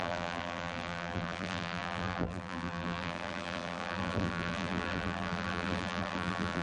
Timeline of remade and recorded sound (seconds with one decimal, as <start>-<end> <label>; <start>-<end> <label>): 0.0-6.6 remade